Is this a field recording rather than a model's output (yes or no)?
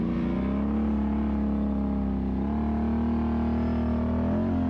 yes